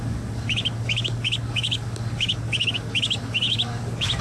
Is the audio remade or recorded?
remade